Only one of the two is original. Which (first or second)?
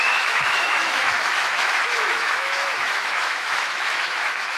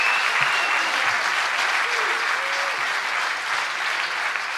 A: second